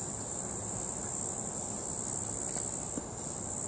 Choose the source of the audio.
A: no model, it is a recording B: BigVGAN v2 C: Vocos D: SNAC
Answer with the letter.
A